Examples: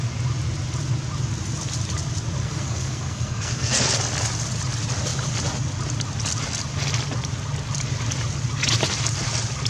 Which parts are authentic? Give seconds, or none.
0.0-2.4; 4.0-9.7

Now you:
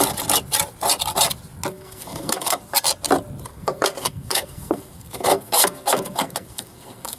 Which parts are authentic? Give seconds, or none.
0.0-1.7; 2.6-3.5

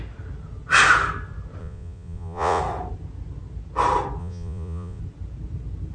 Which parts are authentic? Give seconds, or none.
0.0-1.6; 2.6-4.2; 5.0-5.9

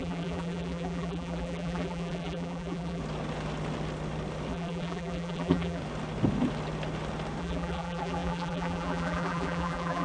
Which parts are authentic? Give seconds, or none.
3.0-4.5; 5.8-7.4